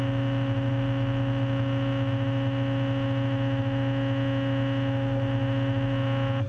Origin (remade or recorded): recorded